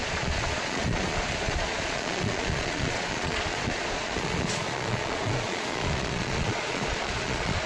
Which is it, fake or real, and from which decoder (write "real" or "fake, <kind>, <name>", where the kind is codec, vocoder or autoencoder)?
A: fake, vocoder, Vocos